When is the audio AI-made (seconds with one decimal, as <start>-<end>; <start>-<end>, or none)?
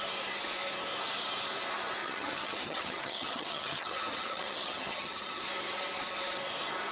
2.0-5.4